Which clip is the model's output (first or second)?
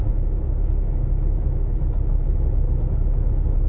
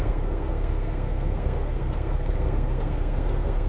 second